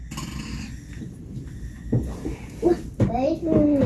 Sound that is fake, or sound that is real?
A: real